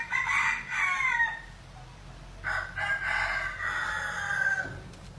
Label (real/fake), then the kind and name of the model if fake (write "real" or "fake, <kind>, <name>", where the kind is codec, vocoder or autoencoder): real